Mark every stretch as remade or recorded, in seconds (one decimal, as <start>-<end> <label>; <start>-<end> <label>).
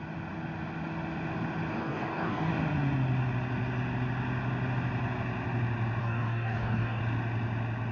0.0-1.7 recorded; 1.7-2.5 remade; 2.5-6.0 recorded; 6.0-7.0 remade; 7.0-7.9 recorded